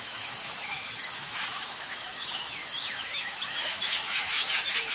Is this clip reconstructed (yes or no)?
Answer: yes